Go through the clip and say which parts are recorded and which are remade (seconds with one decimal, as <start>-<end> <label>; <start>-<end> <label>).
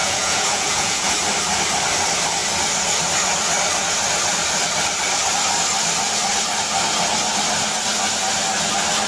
0.0-1.1 remade; 1.1-9.1 recorded